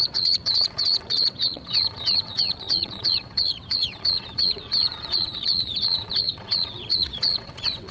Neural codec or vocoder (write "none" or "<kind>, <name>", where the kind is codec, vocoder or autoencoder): vocoder, WaveNeXt